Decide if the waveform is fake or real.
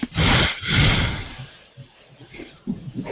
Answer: fake